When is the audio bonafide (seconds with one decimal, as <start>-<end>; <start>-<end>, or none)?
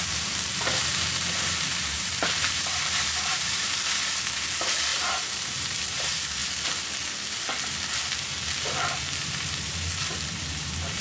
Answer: 6.4-9.2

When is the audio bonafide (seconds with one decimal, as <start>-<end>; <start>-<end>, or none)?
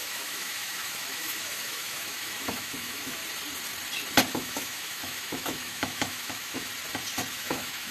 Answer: 3.2-4.3; 6.7-7.3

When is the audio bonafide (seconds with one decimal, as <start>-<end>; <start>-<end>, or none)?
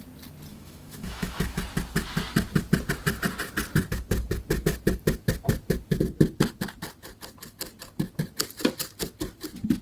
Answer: 0.0-0.5; 1.6-9.8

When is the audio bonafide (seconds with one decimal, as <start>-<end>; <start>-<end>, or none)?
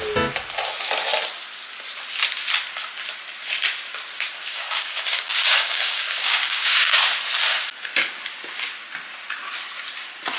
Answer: 0.0-4.5; 7.0-10.4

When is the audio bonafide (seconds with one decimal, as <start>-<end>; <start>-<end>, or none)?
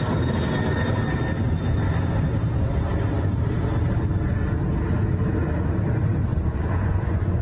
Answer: 0.0-6.3